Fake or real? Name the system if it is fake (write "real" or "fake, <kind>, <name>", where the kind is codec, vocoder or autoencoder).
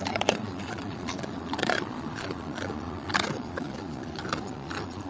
fake, vocoder, Vocos